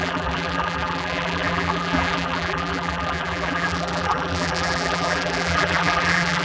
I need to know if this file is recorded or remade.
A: remade